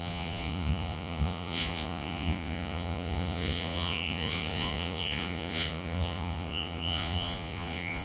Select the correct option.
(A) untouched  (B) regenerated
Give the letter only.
B